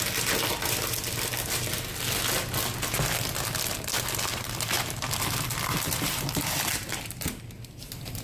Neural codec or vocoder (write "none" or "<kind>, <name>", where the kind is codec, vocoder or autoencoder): none